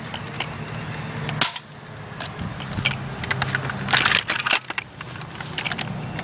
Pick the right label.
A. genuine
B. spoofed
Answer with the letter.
A